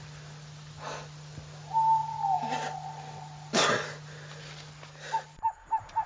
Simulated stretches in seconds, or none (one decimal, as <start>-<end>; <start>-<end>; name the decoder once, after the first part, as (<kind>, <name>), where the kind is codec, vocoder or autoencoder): 2.0-4.4 (vocoder, BigVGAN v2)